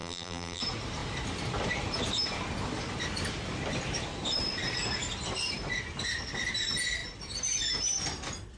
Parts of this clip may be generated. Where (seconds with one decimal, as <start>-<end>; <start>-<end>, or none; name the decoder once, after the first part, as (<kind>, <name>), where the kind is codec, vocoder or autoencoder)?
0.0-0.6 (vocoder, BigVGAN v2)